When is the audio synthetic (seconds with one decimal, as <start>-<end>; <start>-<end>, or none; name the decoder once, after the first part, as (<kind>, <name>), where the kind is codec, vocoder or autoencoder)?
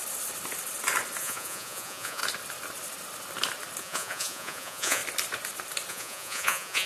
1.2-2.2 (vocoder, Vocos); 3.8-5.0; 5.9-6.9